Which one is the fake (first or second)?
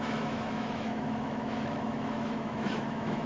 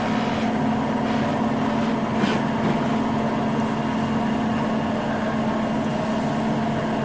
first